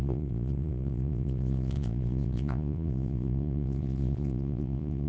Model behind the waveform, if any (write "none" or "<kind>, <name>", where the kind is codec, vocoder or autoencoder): vocoder, Vocos